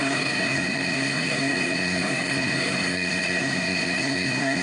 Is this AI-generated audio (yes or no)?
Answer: yes